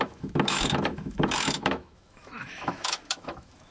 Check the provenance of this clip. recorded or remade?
remade